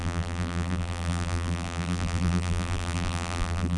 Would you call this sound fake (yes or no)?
yes